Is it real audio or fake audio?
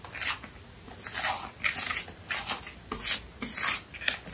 real